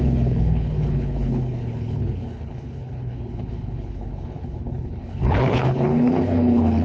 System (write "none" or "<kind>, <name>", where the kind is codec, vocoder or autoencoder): codec, HILCodec